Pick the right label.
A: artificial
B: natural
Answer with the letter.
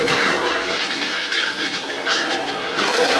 A